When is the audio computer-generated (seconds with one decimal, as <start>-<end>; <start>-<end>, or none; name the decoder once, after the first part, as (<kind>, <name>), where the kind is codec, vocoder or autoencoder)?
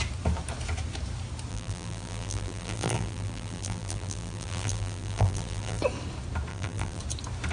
1.5-5.8 (vocoder, BigVGAN v2); 6.5-7.0